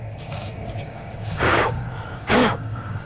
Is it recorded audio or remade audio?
remade